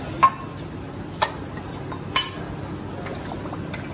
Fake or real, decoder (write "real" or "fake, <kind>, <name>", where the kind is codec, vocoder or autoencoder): real